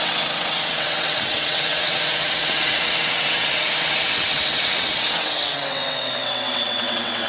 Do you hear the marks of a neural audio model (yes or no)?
yes